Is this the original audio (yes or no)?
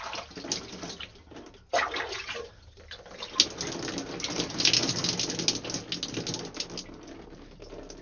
yes